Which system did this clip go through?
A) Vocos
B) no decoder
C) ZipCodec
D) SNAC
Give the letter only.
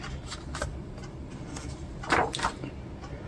B